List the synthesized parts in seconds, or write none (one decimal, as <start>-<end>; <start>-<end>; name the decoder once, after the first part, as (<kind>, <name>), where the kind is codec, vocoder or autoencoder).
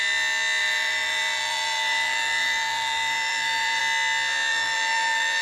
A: 0.6-3.8 (vocoder, BigVGAN v2); 4.5-5.4